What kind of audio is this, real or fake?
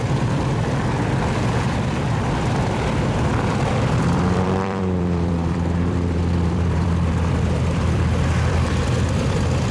fake